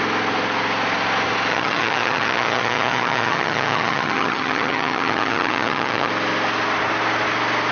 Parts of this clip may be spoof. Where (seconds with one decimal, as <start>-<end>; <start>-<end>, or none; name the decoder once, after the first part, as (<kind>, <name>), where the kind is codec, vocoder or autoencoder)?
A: 1.5-6.1 (vocoder, HiFi-GAN)